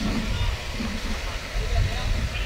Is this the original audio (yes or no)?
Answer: yes